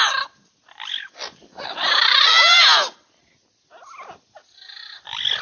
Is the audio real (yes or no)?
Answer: yes